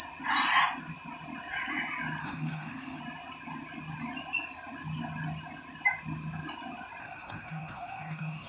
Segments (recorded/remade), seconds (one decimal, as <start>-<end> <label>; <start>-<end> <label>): 0.0-2.2 recorded; 2.2-3.0 remade; 3.0-7.0 recorded; 7.0-8.5 remade